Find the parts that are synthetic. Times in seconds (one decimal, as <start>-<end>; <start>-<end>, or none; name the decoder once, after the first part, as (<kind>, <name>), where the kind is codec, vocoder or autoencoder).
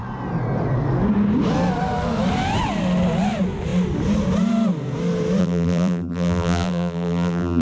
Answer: 5.4-7.6 (vocoder, BigVGAN v2)